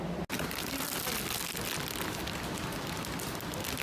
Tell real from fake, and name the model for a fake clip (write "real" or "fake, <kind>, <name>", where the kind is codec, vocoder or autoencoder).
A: real